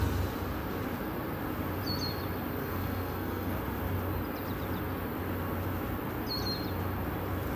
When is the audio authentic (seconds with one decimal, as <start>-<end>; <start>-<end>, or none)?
0.0-2.6; 3.6-7.6